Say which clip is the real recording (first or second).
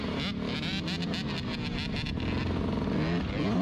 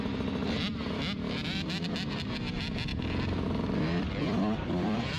first